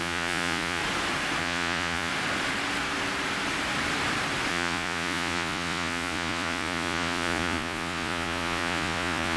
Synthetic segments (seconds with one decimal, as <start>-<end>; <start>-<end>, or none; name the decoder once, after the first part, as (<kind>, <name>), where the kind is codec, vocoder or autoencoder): 0.0-0.8 (vocoder, Vocos); 1.4-2.1; 4.5-9.4

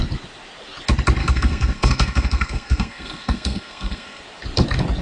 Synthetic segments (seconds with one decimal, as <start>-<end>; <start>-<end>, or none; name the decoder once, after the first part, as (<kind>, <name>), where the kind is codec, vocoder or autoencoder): 1.2-4.2 (codec, SNAC)

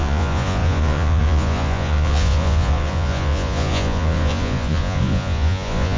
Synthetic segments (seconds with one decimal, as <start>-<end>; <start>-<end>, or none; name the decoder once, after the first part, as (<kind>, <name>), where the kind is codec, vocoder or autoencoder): 0.0-6.0 (vocoder, Vocos)

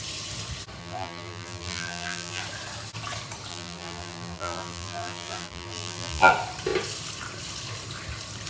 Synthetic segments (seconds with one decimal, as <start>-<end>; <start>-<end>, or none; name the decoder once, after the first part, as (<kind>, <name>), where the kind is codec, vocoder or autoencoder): 0.8-2.4 (vocoder, BigVGAN v2); 3.5-6.3

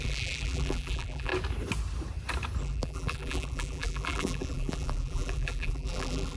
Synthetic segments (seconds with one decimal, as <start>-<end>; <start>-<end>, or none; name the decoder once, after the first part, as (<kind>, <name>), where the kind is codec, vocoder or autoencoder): 0.0-1.3 (vocoder, BigVGAN v2); 2.6-6.4

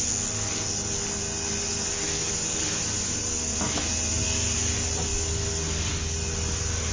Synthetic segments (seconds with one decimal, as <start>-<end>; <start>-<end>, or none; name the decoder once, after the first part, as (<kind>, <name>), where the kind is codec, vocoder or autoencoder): none